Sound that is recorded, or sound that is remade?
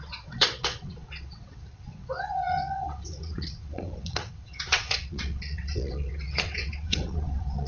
remade